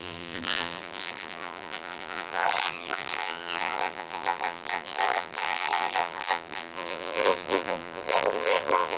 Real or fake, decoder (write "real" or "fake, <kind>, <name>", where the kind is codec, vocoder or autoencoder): fake, vocoder, BigVGAN v2